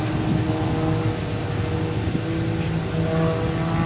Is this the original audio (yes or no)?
yes